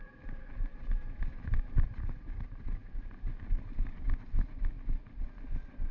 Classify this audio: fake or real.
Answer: real